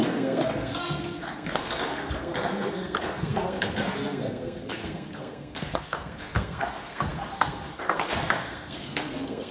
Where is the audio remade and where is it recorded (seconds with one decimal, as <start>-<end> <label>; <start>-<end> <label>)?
0.0-9.5 remade